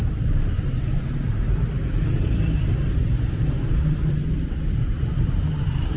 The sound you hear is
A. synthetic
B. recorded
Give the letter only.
A